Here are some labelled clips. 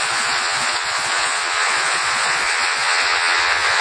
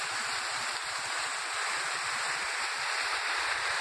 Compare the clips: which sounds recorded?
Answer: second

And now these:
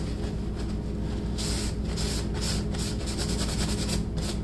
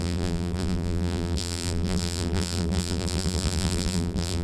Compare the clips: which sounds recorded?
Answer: first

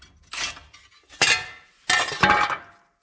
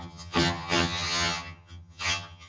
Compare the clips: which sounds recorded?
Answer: first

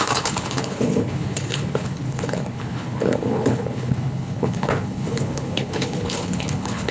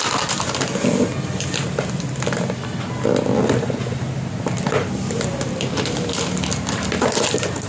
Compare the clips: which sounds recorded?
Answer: second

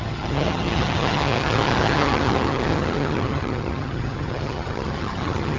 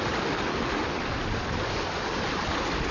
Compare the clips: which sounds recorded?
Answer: second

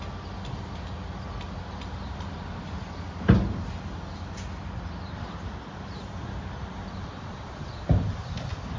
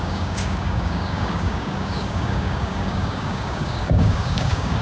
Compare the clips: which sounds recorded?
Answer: first